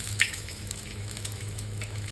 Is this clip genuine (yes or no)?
no